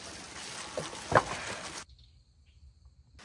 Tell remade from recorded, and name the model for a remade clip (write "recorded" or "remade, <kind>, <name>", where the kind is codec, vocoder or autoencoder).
recorded